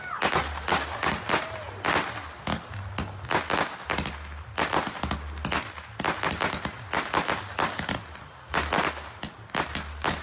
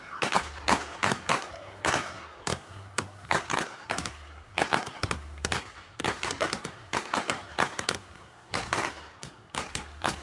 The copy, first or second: second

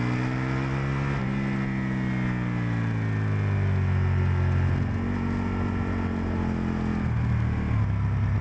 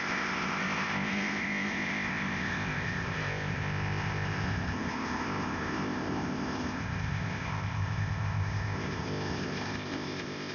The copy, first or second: second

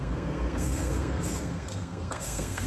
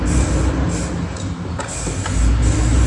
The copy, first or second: first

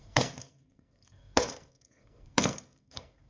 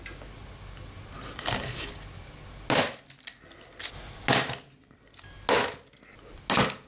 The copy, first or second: first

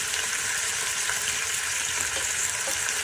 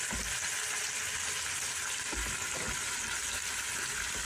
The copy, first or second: first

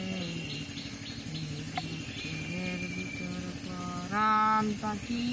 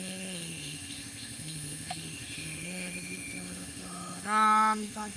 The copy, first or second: second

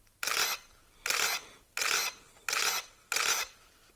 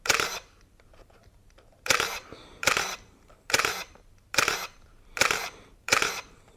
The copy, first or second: second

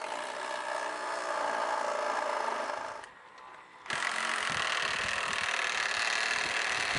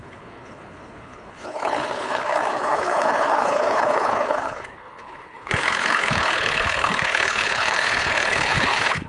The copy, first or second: second